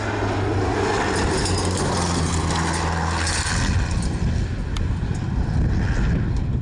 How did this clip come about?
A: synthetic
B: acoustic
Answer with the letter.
B